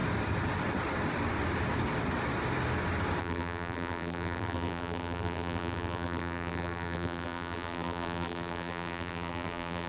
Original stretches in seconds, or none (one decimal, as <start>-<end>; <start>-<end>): 0.0-3.2